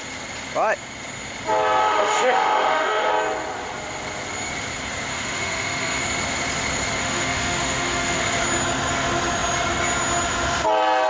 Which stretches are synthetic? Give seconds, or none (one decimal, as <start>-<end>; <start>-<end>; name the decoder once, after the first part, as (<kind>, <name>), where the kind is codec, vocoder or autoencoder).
1.8-3.1 (autoencoder, DAC-VAE); 5.1-6.0; 7.0-8.2